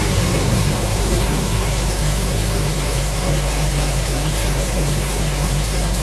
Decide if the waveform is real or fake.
fake